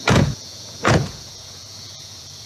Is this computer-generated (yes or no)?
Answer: yes